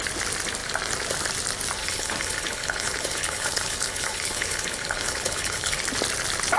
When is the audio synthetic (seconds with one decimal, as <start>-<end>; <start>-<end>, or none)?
1.8-5.8